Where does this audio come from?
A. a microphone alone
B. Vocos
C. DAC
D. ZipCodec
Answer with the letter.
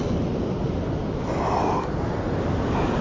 A